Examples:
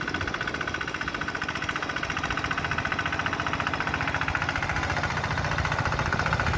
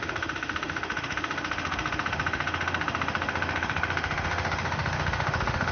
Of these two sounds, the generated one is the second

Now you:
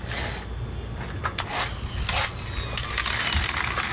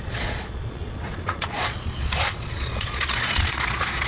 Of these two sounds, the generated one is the second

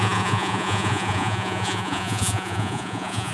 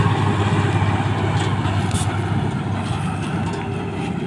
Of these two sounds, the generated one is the first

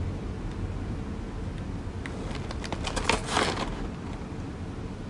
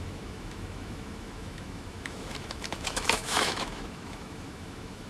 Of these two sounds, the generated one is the second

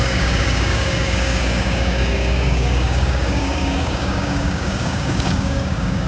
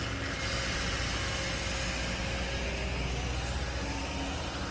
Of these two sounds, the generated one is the first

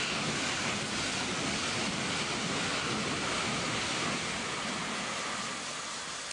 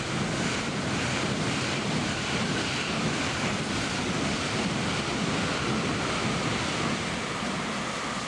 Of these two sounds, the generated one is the second